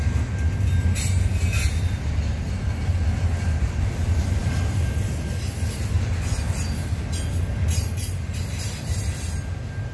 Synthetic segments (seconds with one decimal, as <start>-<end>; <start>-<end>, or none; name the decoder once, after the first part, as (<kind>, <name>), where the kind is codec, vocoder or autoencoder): none